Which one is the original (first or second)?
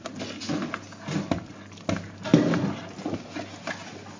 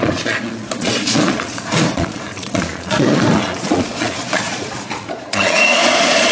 first